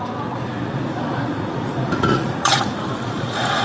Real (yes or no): no